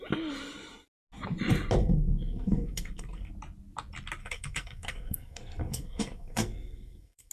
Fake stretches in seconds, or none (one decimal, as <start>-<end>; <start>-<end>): 1.8-3.3; 4.2-7.3